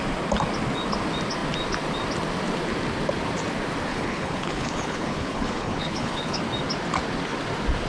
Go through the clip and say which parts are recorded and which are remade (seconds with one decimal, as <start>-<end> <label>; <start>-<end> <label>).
0.0-3.9 recorded; 3.9-6.4 remade; 6.4-7.9 recorded